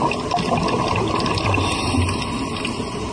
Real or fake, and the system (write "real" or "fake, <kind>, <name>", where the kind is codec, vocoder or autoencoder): real